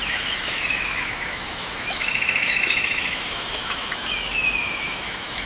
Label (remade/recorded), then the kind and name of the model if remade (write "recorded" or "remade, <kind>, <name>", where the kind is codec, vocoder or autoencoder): remade, autoencoder, DAC-VAE